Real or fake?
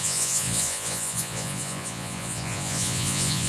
fake